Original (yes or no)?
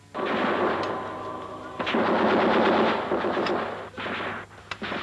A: yes